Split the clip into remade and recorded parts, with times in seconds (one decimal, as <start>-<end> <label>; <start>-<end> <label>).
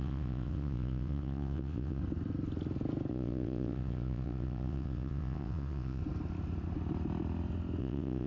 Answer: 0.0-2.0 remade; 2.0-3.1 recorded; 3.1-6.0 remade; 6.0-7.8 recorded; 7.8-8.3 remade